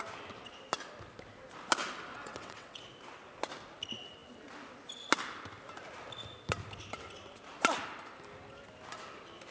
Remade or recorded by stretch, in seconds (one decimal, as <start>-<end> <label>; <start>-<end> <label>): 0.0-2.1 recorded; 2.1-2.8 remade; 2.8-9.5 recorded